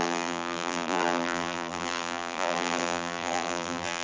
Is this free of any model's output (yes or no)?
no